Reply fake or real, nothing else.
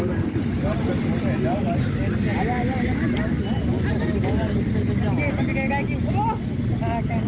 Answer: real